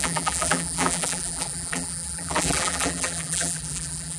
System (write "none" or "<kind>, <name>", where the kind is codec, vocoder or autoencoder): vocoder, BigVGAN v2